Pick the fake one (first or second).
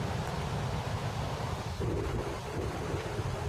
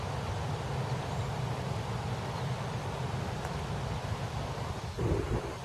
second